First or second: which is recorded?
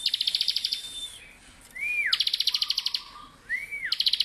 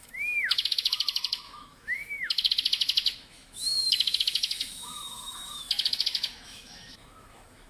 first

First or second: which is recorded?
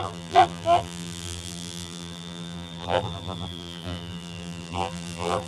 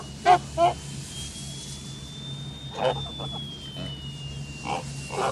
second